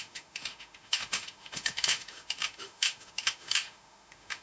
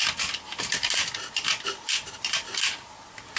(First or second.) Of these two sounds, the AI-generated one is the first